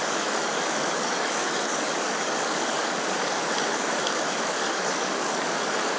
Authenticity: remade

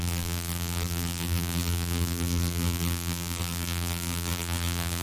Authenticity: remade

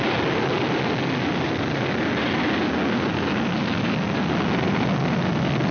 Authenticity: recorded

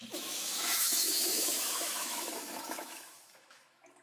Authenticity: remade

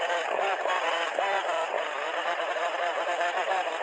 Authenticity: remade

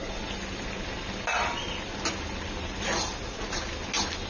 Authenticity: recorded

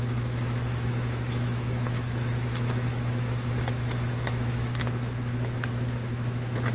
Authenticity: remade